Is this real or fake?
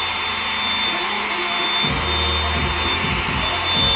real